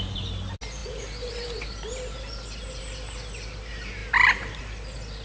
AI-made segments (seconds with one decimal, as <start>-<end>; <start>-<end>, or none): none